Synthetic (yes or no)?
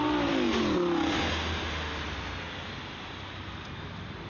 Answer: no